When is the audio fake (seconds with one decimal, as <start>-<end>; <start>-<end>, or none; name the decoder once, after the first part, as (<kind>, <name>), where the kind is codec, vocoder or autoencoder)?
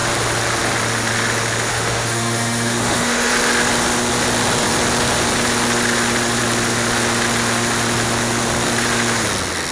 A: 1.7-3.3 (autoencoder, DAC-VAE)